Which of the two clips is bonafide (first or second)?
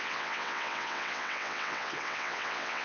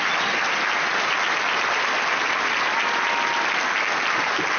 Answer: second